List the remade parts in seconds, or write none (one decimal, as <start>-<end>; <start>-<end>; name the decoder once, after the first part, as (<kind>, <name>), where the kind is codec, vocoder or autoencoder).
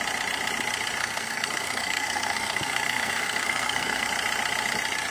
1.0-4.1 (codec, SNAC)